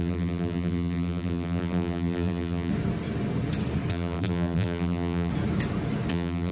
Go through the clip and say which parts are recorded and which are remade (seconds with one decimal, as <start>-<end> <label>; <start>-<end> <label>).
0.0-2.7 remade; 2.7-3.9 recorded; 3.9-5.3 remade; 5.3-6.1 recorded; 6.1-6.5 remade